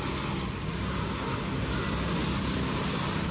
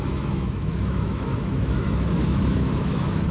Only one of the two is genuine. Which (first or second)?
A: first